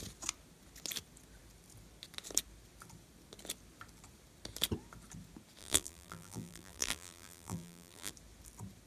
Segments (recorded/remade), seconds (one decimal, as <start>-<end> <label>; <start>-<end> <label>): 0.0-5.6 recorded; 5.6-8.1 remade; 8.1-8.9 recorded